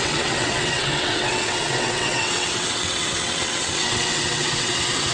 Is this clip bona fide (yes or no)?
no